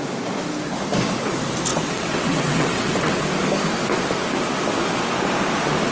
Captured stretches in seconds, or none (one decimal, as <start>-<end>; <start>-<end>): 0.0-1.7; 3.2-5.9